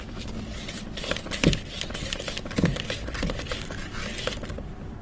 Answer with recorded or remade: remade